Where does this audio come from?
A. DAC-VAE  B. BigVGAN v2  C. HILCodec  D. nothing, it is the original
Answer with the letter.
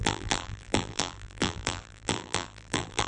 B